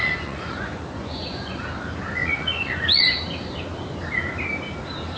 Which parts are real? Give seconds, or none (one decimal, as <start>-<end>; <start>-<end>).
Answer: 1.6-2.2; 3.2-5.2